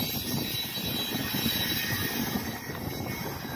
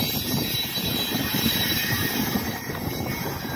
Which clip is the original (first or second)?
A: first